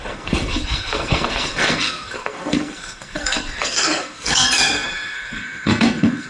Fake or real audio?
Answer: fake